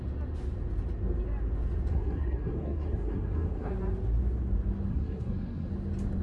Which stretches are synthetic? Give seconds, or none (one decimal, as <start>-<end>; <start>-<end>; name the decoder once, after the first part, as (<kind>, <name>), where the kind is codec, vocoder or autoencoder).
1.9-3.7 (codec, SNAC); 4.9-5.7